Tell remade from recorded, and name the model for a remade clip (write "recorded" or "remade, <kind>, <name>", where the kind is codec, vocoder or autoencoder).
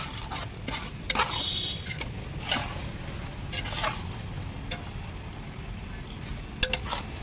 recorded